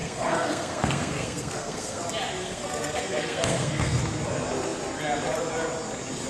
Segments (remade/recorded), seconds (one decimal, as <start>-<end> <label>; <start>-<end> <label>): 0.0-2.0 remade; 2.0-2.4 recorded; 2.4-4.0 remade; 4.0-6.3 recorded